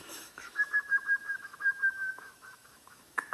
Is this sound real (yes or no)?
no